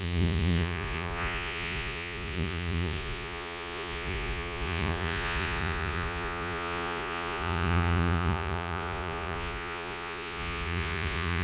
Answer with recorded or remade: remade